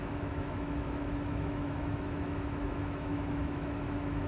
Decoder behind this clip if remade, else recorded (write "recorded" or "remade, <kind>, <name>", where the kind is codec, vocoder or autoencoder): remade, autoencoder, DAC-VAE